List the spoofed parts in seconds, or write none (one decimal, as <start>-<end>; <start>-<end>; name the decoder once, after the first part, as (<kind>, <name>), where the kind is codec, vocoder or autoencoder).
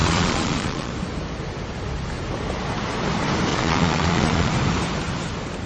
0.0-0.9 (vocoder, Vocos); 3.5-4.5